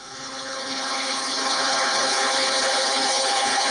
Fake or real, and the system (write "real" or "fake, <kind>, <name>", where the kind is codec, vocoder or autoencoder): fake, codec, HILCodec